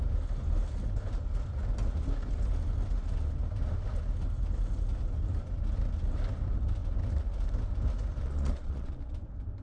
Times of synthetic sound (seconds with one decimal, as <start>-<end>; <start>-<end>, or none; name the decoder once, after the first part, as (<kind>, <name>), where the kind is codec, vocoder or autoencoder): 8.2-9.1 (vocoder, Vocos)